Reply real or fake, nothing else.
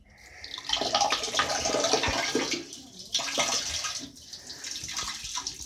real